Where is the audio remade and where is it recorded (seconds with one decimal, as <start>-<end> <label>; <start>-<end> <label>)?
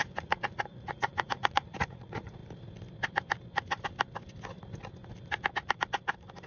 0.0-2.4 remade; 2.4-6.5 recorded